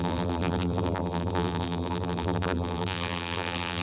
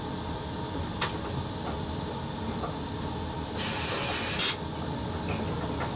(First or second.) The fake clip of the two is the first